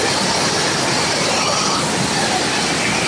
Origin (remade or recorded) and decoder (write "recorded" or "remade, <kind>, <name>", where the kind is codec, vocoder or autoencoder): recorded